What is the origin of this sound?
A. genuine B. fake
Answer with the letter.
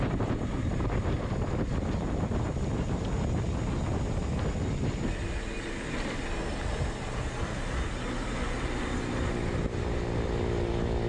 A